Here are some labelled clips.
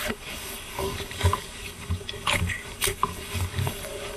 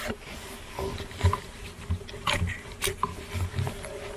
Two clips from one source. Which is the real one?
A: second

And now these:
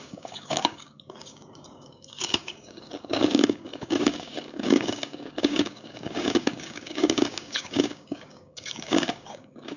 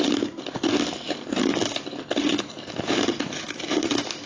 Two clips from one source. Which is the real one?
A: second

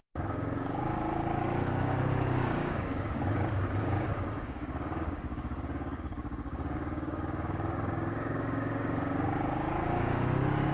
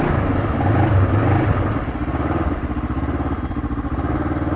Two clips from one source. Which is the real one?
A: second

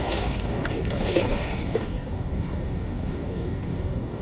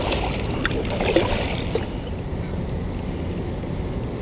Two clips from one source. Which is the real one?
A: second